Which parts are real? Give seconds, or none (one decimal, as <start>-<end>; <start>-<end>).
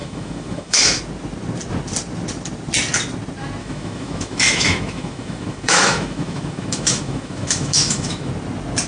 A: 1.0-3.6; 8.3-8.9